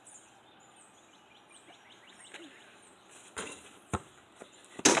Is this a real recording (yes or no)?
yes